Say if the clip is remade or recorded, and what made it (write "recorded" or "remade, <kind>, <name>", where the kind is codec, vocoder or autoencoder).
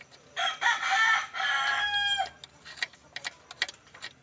recorded